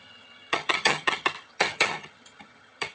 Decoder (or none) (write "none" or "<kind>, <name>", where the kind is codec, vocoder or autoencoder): vocoder, HiFi-GAN